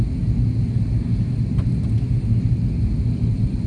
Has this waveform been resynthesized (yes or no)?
no